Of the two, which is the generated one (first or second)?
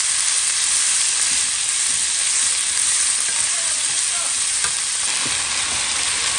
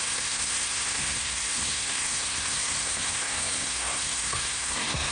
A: second